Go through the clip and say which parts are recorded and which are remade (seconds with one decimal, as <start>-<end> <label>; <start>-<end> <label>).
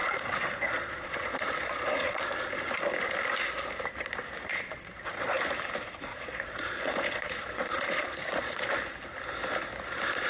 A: 0.0-2.2 remade; 2.2-4.5 recorded; 4.5-5.4 remade; 5.4-6.1 recorded; 6.1-8.7 remade; 8.7-10.3 recorded